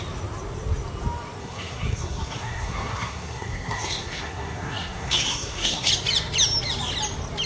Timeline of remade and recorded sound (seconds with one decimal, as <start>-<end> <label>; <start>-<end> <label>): 0.0-1.4 recorded; 1.4-5.9 remade; 5.9-7.5 recorded